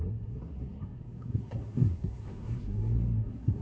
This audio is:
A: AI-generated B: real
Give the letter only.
A